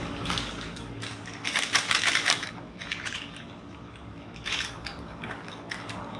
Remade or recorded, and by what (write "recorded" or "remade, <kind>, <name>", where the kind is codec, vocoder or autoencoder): remade, codec, DAC